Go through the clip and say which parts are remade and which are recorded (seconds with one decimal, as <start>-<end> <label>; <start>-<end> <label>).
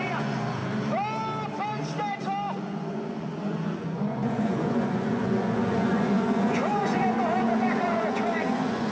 0.0-0.6 remade; 0.6-2.6 recorded; 2.6-8.9 remade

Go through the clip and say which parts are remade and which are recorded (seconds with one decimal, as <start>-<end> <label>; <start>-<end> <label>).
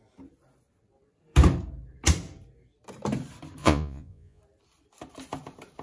0.0-3.6 recorded; 3.6-4.4 remade; 4.4-5.8 recorded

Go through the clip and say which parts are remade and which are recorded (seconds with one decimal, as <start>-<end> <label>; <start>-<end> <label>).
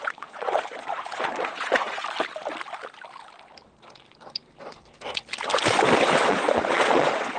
0.0-2.0 remade; 2.0-6.3 recorded; 6.3-7.4 remade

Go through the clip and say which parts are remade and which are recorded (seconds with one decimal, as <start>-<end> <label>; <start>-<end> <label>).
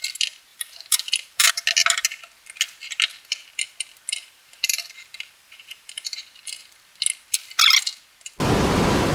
0.0-0.5 recorded; 0.5-1.5 remade; 1.5-4.2 recorded; 4.2-6.2 remade; 6.2-9.1 recorded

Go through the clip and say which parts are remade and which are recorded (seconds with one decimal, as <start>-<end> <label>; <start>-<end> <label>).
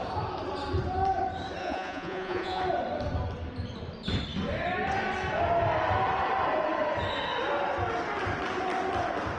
0.0-1.6 recorded; 1.6-2.6 remade; 2.6-9.4 recorded